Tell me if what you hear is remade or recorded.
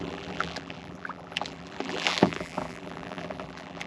remade